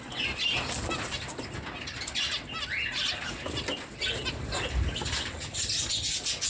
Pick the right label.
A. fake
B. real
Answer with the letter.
B